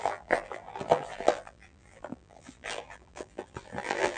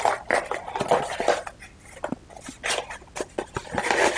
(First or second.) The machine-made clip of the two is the first